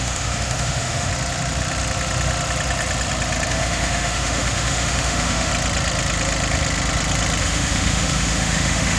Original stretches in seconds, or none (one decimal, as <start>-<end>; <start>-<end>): 1.1-3.5; 5.5-7.4